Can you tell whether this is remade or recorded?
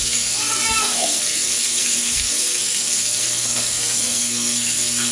remade